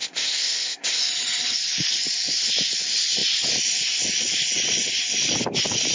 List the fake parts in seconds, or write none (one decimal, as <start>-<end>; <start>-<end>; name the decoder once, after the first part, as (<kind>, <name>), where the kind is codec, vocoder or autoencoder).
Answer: 0.0-1.0 (codec, ZipCodec)